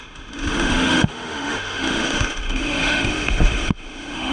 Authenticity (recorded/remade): remade